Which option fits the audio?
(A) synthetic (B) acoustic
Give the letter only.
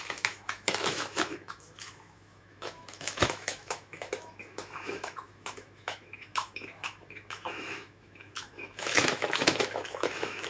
A